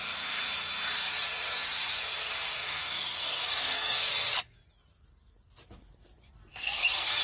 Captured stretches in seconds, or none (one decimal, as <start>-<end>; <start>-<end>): 0.0-2.2; 4.1-6.5